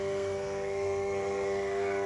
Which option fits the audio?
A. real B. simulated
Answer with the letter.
B